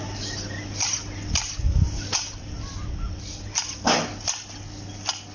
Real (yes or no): no